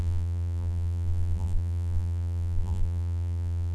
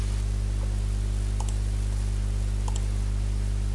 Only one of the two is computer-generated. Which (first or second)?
first